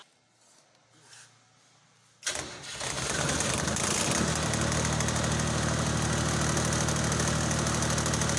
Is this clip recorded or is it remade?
recorded